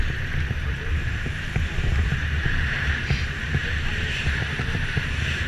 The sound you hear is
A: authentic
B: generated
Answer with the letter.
B